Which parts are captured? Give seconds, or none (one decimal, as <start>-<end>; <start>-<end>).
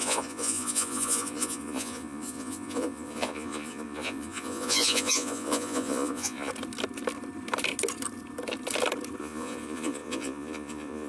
6.5-9.2